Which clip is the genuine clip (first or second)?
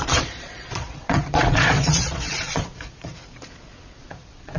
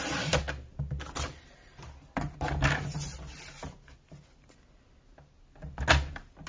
second